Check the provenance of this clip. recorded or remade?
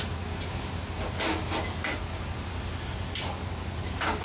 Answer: recorded